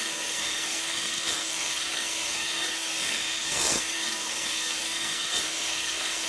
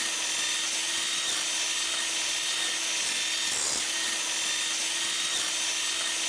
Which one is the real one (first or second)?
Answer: second